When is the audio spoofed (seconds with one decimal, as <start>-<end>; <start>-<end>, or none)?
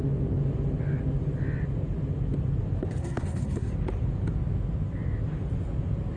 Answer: 3.0-3.7